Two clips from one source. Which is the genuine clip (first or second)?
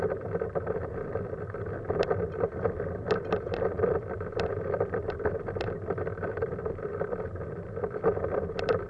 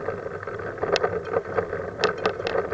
second